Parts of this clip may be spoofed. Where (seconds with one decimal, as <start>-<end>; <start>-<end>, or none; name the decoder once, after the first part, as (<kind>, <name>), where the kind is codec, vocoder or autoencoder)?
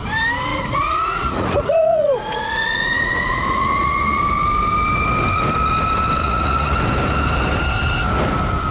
0.5-4.2 (vocoder, Vocos); 6.2-6.8